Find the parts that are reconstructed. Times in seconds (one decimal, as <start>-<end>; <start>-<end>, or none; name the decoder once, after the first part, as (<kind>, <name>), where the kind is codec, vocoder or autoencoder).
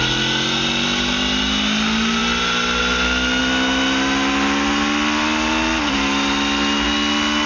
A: none